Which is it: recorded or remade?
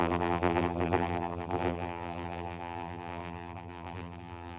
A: remade